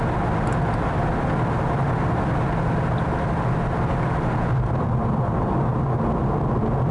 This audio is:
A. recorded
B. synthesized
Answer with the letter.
A